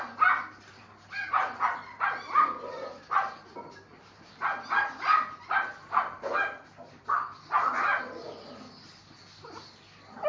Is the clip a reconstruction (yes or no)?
no